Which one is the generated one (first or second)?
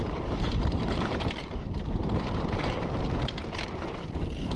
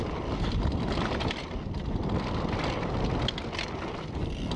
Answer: first